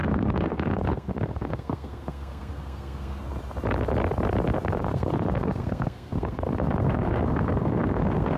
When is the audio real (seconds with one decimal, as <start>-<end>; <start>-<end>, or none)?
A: 3.2-4.7